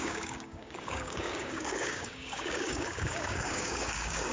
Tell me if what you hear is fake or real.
fake